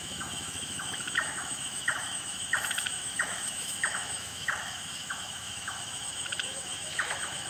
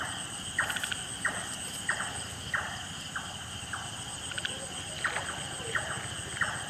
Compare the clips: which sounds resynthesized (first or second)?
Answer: first